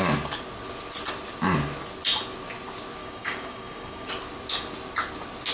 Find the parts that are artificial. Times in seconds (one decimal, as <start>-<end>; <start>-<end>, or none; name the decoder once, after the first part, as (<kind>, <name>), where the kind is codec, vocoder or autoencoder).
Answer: 3.0-4.1 (codec, DAC)